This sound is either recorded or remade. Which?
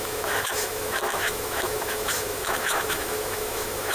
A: remade